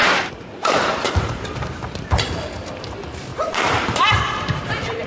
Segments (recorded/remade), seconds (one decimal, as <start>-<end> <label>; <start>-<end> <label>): 0.0-5.1 remade